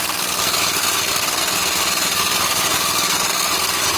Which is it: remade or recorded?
remade